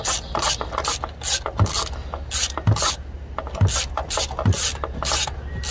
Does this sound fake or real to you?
real